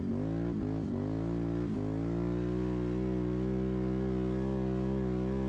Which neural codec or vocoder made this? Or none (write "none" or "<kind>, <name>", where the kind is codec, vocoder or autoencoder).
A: none